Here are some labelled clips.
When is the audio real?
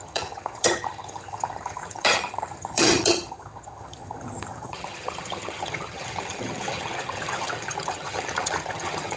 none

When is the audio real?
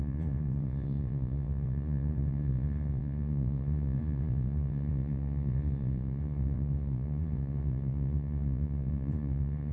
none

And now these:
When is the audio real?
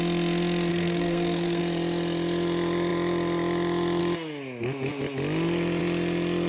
0.0-0.7; 1.6-6.5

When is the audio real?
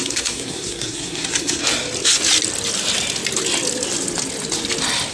1.6-5.1